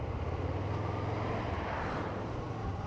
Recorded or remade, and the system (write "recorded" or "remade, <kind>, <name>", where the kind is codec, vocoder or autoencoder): recorded